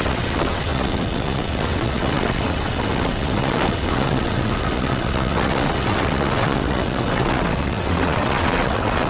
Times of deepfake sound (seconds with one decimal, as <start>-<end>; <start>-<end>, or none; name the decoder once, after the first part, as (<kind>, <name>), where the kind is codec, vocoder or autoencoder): 0.0-9.1 (vocoder, WaveNeXt)